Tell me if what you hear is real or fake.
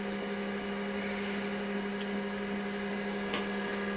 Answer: real